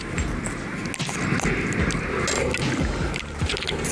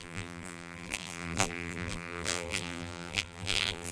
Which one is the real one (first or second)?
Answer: first